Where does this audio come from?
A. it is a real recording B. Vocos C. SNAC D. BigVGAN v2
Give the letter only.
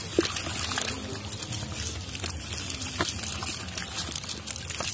A